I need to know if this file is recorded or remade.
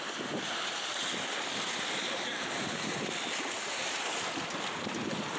recorded